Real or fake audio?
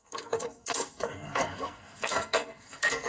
fake